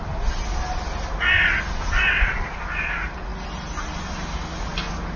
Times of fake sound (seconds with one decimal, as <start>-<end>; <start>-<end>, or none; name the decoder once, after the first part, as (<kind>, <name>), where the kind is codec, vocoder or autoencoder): none